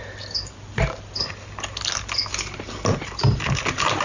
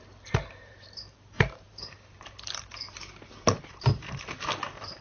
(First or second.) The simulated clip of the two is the second